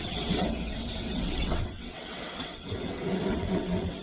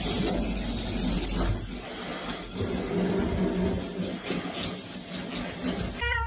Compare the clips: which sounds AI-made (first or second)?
first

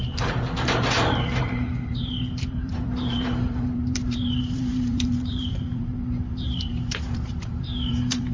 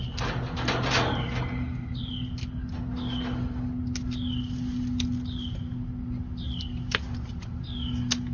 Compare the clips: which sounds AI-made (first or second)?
first